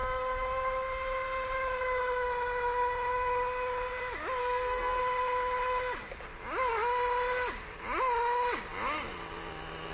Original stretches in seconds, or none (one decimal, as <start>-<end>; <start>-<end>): 0.0-4.4; 5.0-9.9